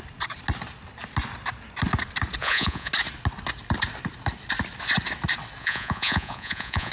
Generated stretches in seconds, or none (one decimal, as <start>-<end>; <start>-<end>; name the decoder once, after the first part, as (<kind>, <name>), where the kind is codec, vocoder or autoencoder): 2.4-2.9 (vocoder, Vocos); 5.6-6.9